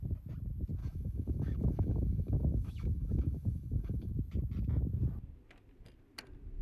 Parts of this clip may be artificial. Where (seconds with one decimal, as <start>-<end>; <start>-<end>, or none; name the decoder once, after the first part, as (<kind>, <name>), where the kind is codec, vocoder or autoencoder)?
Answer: 0.8-4.1 (autoencoder, DAC-VAE)